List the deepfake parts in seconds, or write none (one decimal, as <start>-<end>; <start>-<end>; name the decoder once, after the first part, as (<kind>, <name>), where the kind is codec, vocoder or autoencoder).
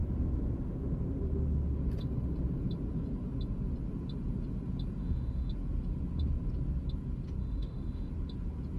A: 5.0-5.5 (autoencoder, DAC-VAE); 7.4-8.1